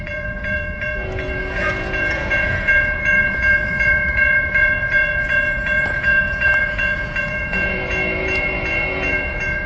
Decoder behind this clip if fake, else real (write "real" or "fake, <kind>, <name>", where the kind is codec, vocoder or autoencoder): fake, vocoder, Vocos